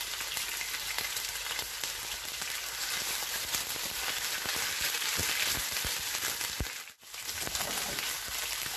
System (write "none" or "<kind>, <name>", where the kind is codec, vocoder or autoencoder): none